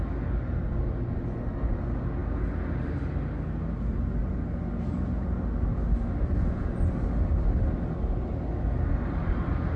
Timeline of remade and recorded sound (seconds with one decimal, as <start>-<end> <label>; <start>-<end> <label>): 0.0-9.8 recorded